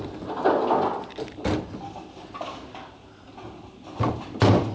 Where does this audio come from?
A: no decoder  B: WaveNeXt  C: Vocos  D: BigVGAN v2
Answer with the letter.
A